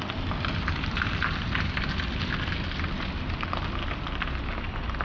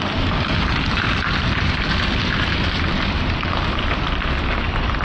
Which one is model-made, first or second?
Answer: second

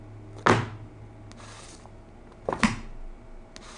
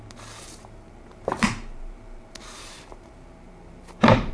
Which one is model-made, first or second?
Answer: second